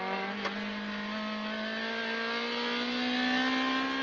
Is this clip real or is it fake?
real